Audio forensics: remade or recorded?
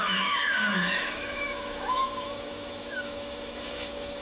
remade